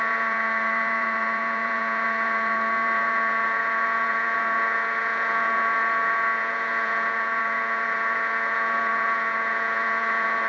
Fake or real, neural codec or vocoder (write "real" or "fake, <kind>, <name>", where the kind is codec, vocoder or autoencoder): fake, vocoder, Vocos